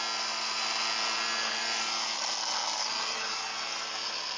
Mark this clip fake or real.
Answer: real